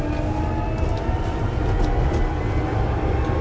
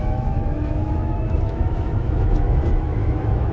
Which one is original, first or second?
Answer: first